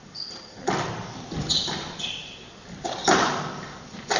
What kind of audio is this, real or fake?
real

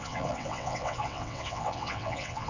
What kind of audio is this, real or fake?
fake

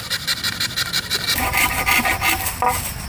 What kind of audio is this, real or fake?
real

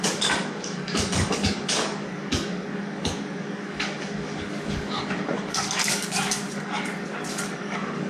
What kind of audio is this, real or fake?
fake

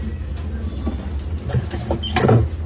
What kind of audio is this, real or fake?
real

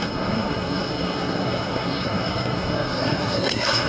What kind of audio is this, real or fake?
fake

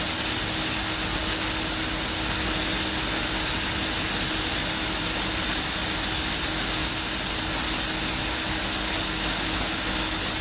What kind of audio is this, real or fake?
real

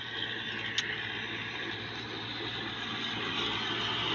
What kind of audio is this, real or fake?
real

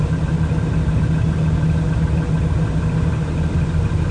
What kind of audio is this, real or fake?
real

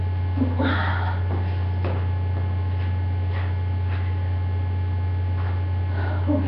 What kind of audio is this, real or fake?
real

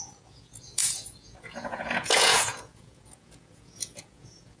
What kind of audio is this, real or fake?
fake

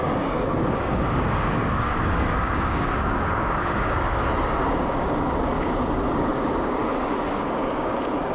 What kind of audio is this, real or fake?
fake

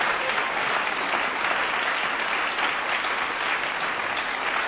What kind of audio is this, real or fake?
real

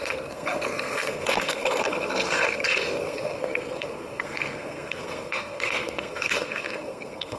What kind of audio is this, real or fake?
fake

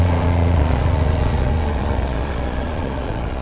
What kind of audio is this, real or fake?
fake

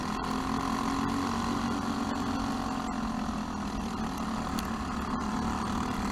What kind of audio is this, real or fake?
real